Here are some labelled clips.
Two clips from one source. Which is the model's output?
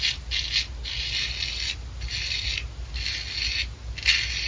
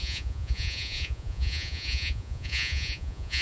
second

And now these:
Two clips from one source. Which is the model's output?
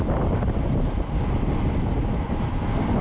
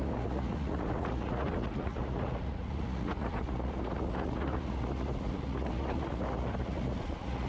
second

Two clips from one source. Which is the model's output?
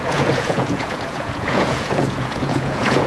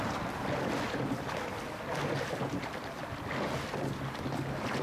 first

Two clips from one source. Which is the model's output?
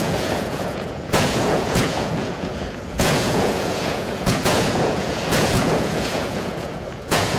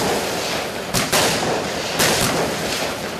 first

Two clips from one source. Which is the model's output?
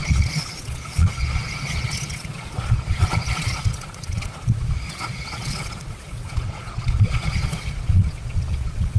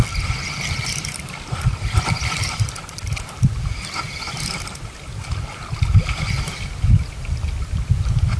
first